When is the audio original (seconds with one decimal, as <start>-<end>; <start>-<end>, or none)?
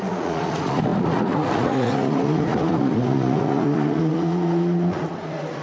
none